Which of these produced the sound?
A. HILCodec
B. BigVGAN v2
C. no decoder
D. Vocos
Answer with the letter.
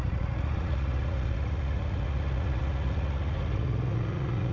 D